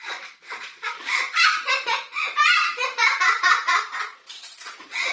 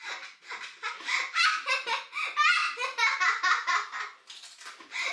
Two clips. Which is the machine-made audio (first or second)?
first